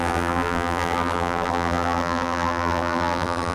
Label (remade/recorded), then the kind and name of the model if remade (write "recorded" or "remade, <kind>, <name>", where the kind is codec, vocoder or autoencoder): remade, vocoder, BigVGAN v2